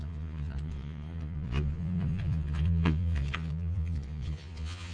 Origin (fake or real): fake